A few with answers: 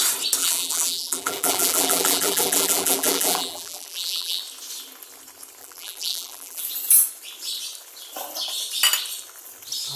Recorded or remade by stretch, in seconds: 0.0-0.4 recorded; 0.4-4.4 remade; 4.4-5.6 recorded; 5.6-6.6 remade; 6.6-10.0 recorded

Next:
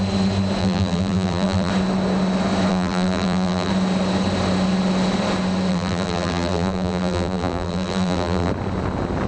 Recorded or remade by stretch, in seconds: 0.0-0.6 recorded; 0.6-1.7 remade; 1.7-2.7 recorded; 2.7-3.7 remade; 3.7-5.7 recorded; 5.7-8.5 remade; 8.5-9.3 recorded

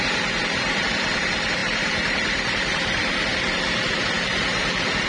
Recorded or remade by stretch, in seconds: 0.0-0.4 recorded; 0.4-1.2 remade; 1.2-1.6 recorded; 1.6-5.1 remade

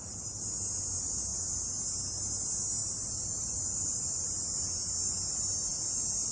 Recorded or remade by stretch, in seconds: 0.0-2.8 recorded; 2.8-4.3 remade; 4.3-6.3 recorded

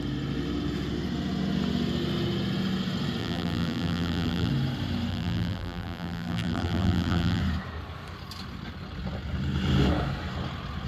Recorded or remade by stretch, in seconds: 0.0-3.2 recorded; 3.2-4.5 remade; 4.5-5.1 recorded; 5.1-7.4 remade; 7.4-10.9 recorded

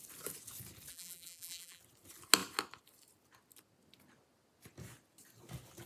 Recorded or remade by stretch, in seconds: 0.0-0.9 recorded; 0.9-1.8 remade; 1.8-5.9 recorded

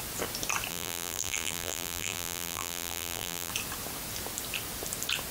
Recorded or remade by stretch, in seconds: 0.0-0.7 recorded; 0.7-3.5 remade; 3.5-5.3 recorded

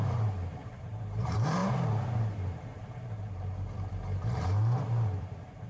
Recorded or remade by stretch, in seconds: 0.0-5.7 remade